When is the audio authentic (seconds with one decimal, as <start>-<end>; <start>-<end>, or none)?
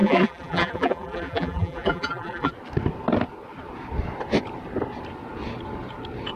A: 2.5-6.4